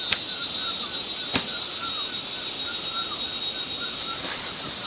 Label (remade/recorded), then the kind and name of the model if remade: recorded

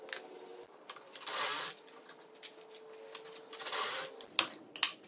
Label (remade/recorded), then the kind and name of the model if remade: recorded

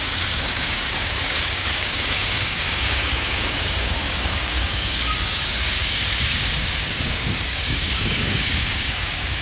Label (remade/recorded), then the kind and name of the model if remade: remade, codec, DAC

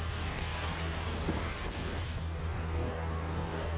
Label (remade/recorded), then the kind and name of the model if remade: remade, codec, DAC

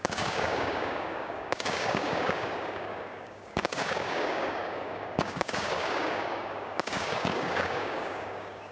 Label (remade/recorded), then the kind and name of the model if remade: remade, codec, DAC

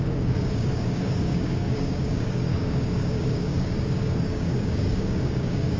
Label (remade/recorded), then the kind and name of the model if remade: remade, codec, DAC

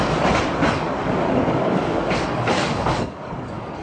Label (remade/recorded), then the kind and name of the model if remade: remade, codec, DAC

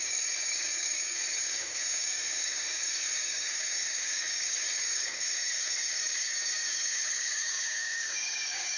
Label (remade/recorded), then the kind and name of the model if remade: remade, codec, DAC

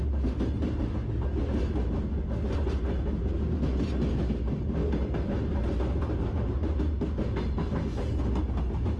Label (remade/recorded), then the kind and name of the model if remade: recorded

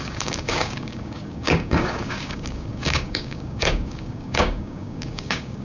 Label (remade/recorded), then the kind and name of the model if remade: remade, codec, DAC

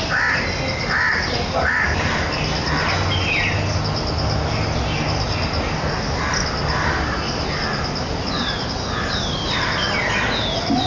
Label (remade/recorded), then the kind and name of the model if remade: recorded